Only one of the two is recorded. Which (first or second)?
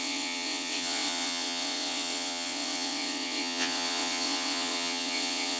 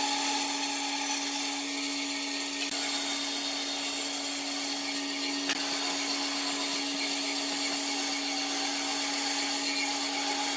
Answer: second